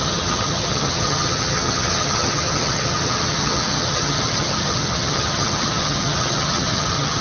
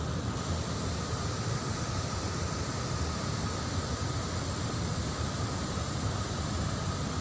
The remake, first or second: first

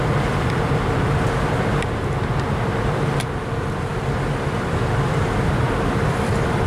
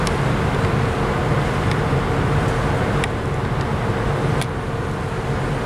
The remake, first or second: first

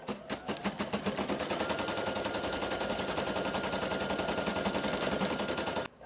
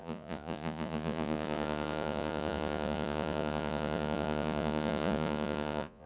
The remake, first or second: second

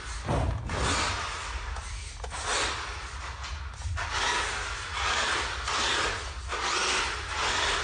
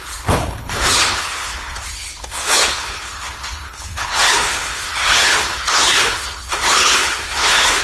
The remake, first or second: second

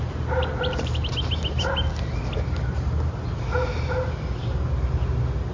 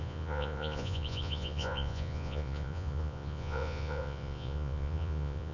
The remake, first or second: second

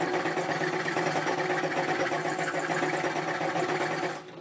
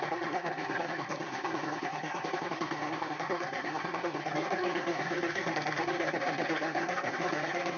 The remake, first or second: second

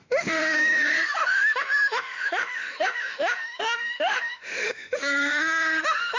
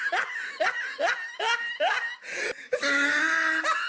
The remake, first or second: first